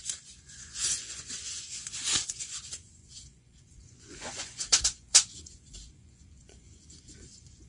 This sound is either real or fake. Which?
fake